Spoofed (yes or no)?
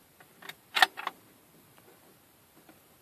no